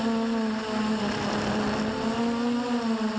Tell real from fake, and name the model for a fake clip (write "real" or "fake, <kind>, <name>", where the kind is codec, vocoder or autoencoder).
real